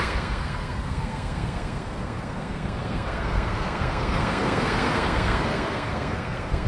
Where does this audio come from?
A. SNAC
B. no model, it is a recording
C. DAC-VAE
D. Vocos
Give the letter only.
A